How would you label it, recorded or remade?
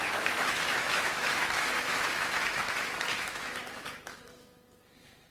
remade